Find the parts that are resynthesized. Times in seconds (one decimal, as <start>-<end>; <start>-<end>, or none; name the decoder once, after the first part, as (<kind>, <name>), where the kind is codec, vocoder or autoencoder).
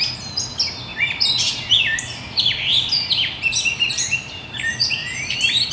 0.9-4.3 (vocoder, BigVGAN v2); 5.0-5.7